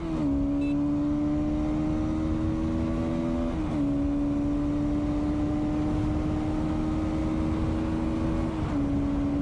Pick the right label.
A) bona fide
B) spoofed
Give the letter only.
A